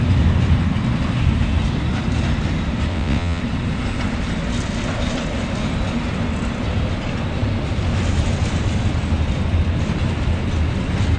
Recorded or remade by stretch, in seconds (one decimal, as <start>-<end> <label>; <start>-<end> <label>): 0.0-2.9 recorded; 2.9-3.4 remade; 3.4-11.2 recorded